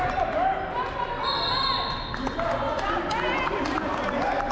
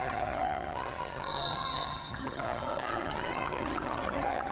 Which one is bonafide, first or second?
first